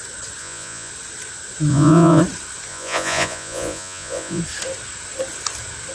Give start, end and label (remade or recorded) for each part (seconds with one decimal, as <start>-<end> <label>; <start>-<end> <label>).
0.0-0.4 recorded; 0.4-0.9 remade; 0.9-1.7 recorded; 1.7-2.2 remade; 2.2-2.7 recorded; 2.7-4.4 remade; 4.4-5.9 recorded